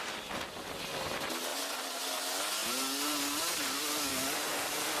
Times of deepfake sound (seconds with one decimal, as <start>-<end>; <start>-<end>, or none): none